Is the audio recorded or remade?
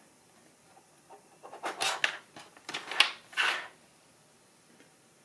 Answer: recorded